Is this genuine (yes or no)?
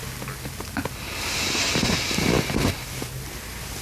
yes